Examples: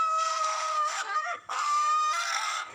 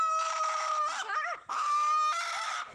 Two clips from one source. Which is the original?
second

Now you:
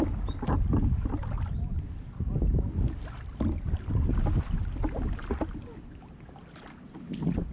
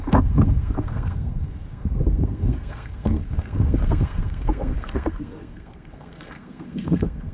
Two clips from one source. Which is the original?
first